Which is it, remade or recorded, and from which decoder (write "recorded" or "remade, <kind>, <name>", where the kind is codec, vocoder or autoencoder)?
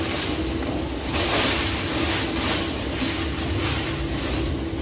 recorded